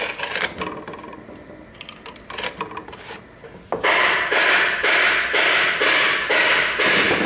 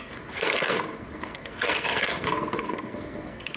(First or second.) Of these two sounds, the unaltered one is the first